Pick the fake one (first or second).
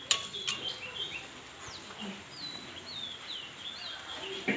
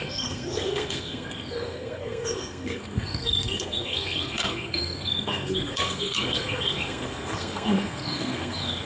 second